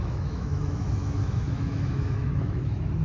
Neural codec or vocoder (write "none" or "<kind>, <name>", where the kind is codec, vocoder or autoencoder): autoencoder, DAC-VAE